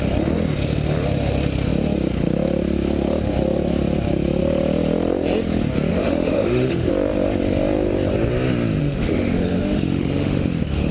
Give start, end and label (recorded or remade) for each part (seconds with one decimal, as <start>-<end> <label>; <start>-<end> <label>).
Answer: 0.0-5.9 recorded; 5.9-6.9 remade; 6.9-8.8 recorded; 8.8-10.9 remade